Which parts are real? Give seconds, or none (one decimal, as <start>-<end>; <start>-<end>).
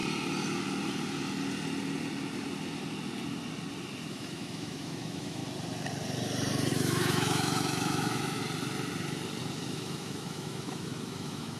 0.0-4.1; 5.4-6.7; 8.4-9.7